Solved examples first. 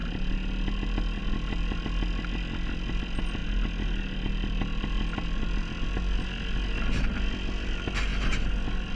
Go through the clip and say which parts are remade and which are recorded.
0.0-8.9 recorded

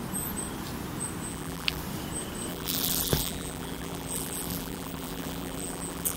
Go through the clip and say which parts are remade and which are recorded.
0.0-1.3 recorded; 1.3-1.8 remade; 1.8-2.5 recorded; 2.5-6.2 remade

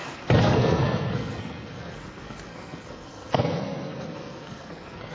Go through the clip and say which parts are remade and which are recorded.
0.0-5.1 remade

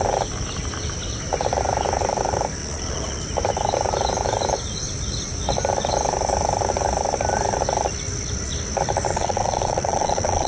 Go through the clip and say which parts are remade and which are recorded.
0.0-2.6 recorded; 2.6-3.2 remade; 3.2-9.1 recorded; 9.1-10.5 remade

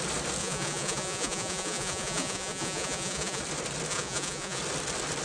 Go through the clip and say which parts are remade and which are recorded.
0.0-0.4 recorded; 0.4-3.4 remade; 3.4-3.9 recorded; 3.9-4.6 remade; 4.6-5.2 recorded

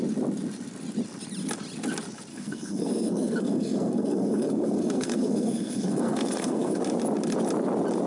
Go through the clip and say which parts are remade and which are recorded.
0.0-2.3 recorded; 2.3-6.8 remade; 6.8-8.1 recorded

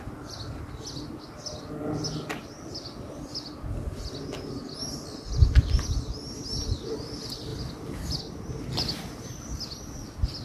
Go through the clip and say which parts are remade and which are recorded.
0.0-10.4 recorded